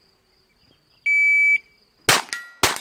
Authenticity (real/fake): real